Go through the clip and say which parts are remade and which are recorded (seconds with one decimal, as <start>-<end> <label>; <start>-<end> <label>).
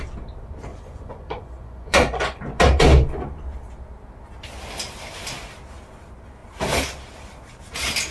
0.0-0.7 recorded; 0.7-2.4 remade; 2.4-8.1 recorded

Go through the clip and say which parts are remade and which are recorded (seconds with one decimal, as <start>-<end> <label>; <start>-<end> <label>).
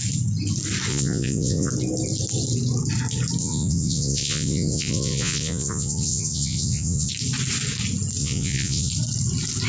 0.0-0.9 recorded; 0.9-1.7 remade; 1.7-3.4 recorded; 3.4-7.1 remade; 7.1-8.2 recorded; 8.2-8.9 remade; 8.9-9.7 recorded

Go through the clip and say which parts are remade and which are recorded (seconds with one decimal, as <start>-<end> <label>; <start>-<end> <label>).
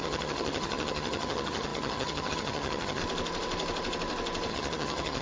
0.0-3.0 remade; 3.0-4.5 recorded; 4.5-5.2 remade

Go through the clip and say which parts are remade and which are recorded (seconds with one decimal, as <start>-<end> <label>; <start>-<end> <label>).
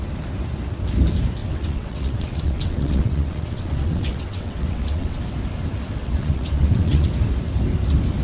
0.0-1.4 recorded; 1.4-5.2 remade; 5.2-6.0 recorded; 6.0-7.1 remade; 7.1-8.2 recorded